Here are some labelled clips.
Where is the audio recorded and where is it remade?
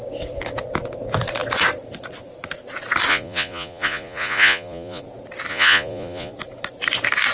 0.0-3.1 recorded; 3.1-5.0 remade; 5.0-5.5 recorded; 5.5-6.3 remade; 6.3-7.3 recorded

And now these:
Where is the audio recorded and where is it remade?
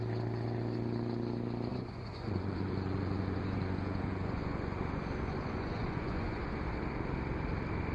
0.0-1.7 recorded; 1.7-6.4 remade; 6.4-7.9 recorded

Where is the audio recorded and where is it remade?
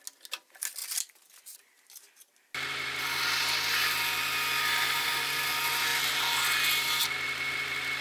0.0-8.0 recorded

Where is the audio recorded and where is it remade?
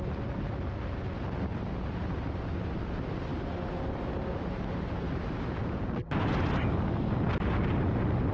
0.0-8.3 recorded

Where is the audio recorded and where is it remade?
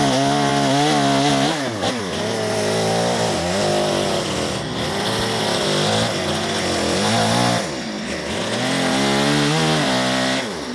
0.0-10.7 recorded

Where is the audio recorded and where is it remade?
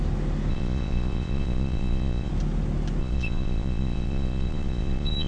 0.0-0.5 recorded; 0.5-2.3 remade; 2.3-3.0 recorded; 3.0-5.3 remade